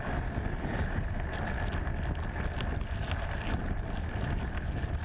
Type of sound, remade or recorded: recorded